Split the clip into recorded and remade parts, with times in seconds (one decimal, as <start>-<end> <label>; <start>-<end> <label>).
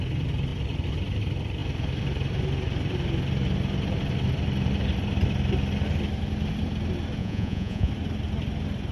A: 0.0-7.2 recorded; 7.2-7.9 remade; 7.9-8.9 recorded